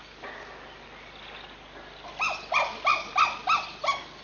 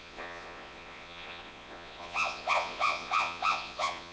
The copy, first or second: second